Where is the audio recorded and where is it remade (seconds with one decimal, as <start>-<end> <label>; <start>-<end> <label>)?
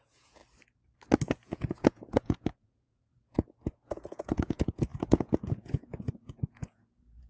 0.0-0.4 remade; 0.4-1.3 recorded; 1.3-7.3 remade